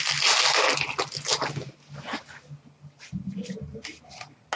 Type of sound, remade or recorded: recorded